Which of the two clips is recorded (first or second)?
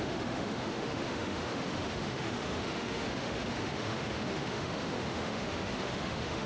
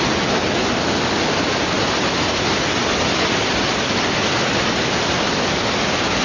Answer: second